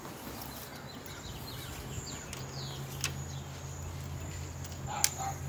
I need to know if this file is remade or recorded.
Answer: recorded